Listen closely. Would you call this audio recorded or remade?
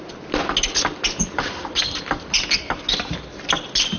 recorded